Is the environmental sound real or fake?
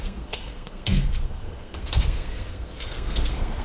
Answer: fake